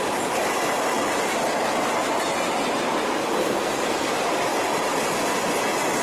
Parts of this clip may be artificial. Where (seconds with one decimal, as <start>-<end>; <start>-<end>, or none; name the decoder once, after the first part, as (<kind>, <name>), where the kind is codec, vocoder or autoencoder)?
3.4-4.1 (codec, SNAC)